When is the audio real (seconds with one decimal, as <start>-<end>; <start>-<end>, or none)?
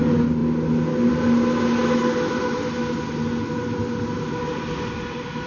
0.0-5.5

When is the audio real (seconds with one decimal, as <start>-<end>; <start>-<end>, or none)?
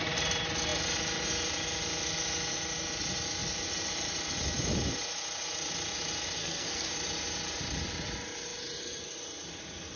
0.0-6.4; 6.9-10.0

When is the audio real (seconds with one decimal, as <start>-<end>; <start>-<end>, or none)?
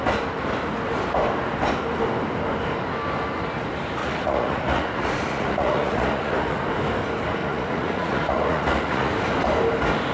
0.0-4.0; 6.6-7.4; 9.1-10.1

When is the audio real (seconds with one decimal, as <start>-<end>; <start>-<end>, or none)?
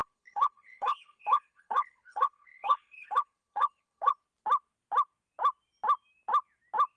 4.1-7.0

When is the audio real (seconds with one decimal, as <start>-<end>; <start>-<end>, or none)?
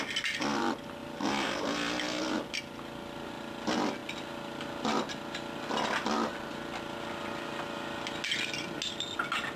0.0-1.0; 2.5-9.6